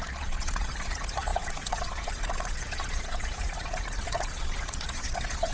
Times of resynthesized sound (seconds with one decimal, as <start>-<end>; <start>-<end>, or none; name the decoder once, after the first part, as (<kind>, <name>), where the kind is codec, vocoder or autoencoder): 0.0-5.5 (vocoder, Vocos)